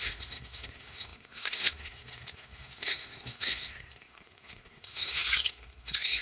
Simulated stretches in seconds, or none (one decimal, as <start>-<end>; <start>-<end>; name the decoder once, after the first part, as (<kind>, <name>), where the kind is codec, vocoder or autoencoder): 0.0-6.2 (codec, SNAC)